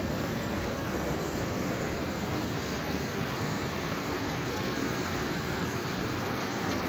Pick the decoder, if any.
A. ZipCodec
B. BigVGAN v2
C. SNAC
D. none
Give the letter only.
C